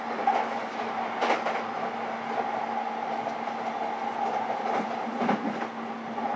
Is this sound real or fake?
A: real